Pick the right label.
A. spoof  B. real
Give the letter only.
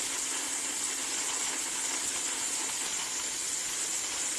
B